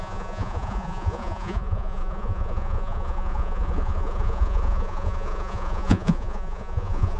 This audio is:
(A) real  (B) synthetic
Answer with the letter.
B